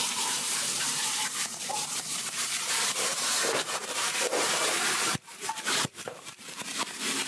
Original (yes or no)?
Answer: no